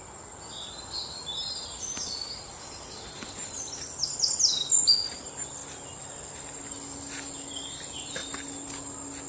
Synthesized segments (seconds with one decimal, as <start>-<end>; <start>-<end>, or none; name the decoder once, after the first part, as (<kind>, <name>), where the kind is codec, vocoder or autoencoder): none